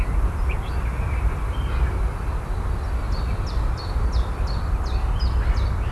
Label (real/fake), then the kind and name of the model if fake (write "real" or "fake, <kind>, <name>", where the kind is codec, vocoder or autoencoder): real